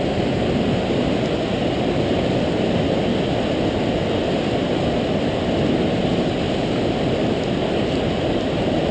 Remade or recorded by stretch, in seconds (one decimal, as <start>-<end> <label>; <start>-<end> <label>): 0.0-8.9 recorded